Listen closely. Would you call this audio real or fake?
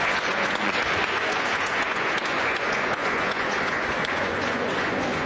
fake